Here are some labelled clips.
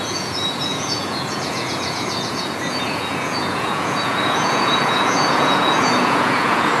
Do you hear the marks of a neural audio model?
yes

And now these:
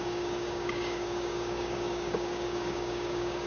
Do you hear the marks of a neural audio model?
yes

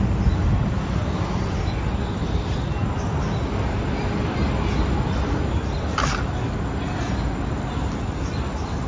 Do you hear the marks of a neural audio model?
no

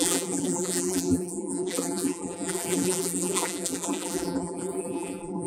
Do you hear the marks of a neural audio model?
yes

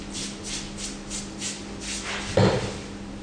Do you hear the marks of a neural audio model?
no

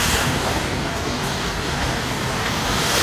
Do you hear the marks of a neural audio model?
yes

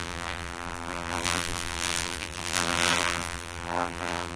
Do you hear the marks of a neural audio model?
yes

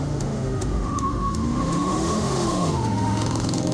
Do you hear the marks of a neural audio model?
yes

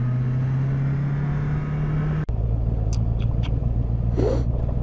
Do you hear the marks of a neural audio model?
no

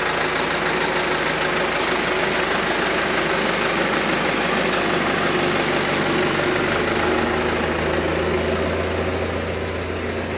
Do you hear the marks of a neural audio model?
no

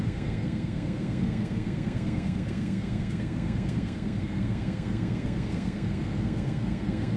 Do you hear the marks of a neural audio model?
yes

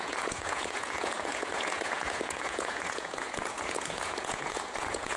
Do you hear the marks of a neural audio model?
yes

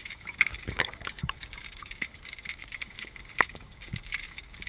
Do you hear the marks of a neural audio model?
yes